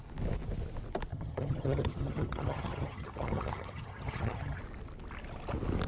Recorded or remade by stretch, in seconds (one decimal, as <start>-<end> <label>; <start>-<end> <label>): 0.0-1.1 recorded; 1.1-4.6 remade; 4.6-5.9 recorded